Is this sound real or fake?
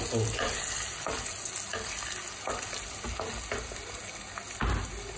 real